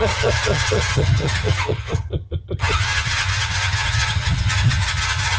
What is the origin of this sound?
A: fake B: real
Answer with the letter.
A